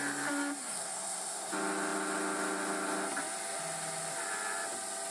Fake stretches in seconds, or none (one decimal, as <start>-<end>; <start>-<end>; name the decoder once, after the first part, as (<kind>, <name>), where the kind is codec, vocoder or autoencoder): 0.6-1.5 (codec, SNAC)